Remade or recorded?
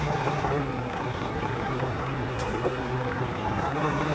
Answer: remade